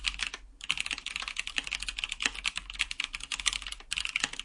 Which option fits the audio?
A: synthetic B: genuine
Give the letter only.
B